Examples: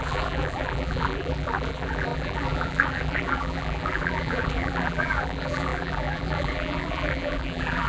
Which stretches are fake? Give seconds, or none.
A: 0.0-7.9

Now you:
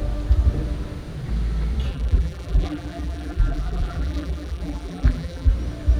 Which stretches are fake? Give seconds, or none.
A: 1.9-5.5

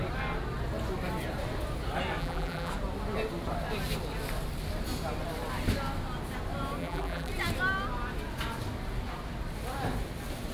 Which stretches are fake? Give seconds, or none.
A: 2.2-2.7; 6.8-7.3

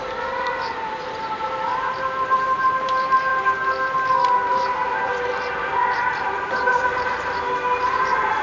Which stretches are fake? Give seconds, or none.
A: 0.0-8.4

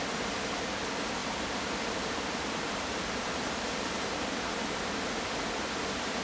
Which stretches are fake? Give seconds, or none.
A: 1.2-4.9

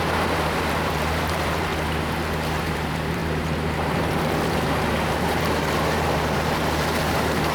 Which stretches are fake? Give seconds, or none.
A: 0.0-1.7; 2.6-7.5